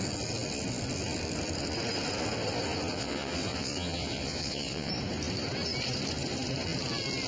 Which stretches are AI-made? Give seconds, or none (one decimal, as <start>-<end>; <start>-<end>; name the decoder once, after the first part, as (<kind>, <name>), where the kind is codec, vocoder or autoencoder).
2.9-4.9 (vocoder, WaveNeXt)